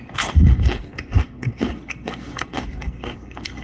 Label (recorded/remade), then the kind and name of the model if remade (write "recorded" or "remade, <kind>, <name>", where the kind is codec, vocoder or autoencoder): remade, codec, SNAC